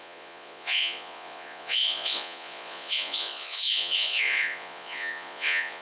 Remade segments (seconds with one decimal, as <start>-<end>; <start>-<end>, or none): 0.0-5.8

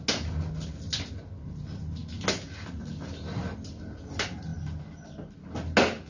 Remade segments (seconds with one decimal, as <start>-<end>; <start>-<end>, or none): none

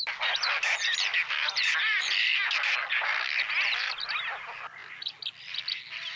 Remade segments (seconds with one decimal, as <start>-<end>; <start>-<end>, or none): none

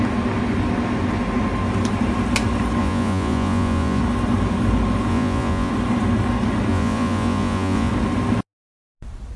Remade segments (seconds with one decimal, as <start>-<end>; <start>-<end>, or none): 2.8-4.0; 5.1-5.7; 6.7-7.9

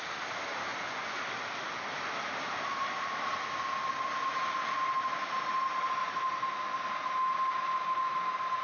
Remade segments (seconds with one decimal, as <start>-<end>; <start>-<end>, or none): 0.7-1.2

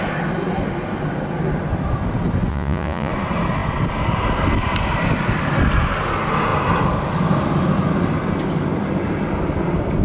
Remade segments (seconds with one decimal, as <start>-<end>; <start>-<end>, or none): 2.5-3.1

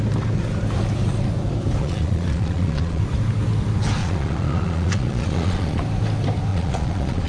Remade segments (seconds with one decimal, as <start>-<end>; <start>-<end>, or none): 1.8-3.0; 4.0-5.8; 6.5-7.3